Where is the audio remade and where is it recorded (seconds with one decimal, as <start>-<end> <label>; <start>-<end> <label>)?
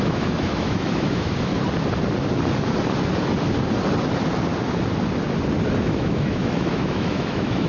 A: 0.0-1.5 remade; 1.5-5.8 recorded; 5.8-7.7 remade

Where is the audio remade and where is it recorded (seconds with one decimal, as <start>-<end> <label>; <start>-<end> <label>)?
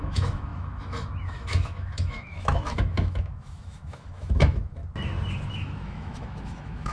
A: 0.0-4.8 remade; 4.8-5.5 recorded; 5.5-6.9 remade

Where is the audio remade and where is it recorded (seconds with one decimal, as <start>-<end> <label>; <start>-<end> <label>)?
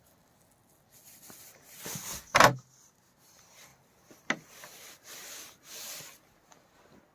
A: 0.0-7.1 recorded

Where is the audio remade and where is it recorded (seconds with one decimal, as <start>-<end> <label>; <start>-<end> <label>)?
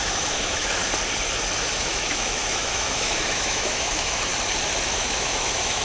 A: 0.0-0.8 remade; 0.8-1.6 recorded; 1.6-4.3 remade; 4.3-4.8 recorded; 4.8-5.8 remade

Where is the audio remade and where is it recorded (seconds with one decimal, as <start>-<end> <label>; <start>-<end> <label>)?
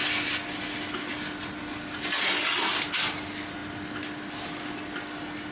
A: 0.0-5.5 recorded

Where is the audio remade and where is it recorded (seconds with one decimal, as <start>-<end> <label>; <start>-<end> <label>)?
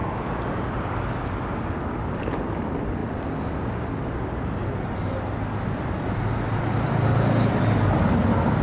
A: 0.0-8.6 recorded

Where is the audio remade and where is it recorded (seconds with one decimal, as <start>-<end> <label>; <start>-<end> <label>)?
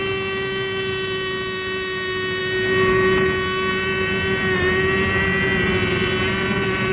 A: 0.0-6.9 recorded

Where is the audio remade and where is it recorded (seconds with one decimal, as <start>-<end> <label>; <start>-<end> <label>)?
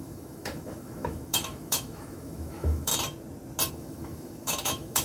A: 0.0-2.9 remade; 2.9-3.7 recorded; 3.7-5.0 remade